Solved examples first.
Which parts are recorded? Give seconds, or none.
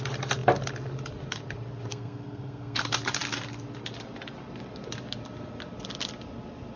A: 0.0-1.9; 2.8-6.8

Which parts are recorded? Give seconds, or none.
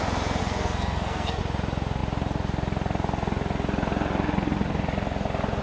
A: 0.0-0.4; 1.4-5.6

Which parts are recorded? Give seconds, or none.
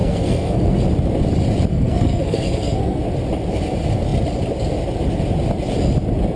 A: 0.8-1.7; 3.0-6.4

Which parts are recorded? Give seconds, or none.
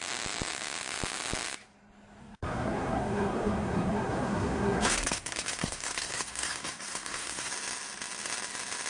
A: 0.0-2.2; 7.5-8.9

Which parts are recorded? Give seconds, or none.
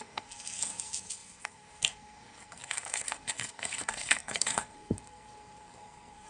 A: none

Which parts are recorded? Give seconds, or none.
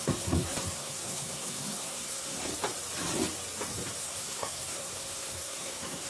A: 2.5-4.0